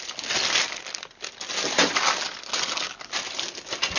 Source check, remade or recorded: recorded